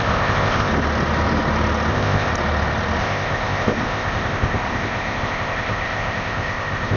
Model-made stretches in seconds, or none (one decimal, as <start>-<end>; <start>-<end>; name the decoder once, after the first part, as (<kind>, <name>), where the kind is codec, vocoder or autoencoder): 0.0-0.7 (codec, ZipCodec); 1.9-2.3; 3.0-7.0